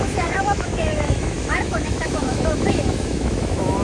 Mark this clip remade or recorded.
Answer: remade